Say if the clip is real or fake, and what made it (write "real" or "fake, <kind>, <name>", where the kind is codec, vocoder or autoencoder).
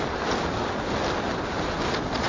real